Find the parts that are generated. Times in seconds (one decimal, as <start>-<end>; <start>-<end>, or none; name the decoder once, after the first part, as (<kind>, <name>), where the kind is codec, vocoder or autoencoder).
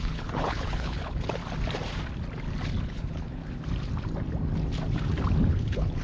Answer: 0.0-1.4 (codec, HILCodec); 2.8-3.4; 5.5-6.0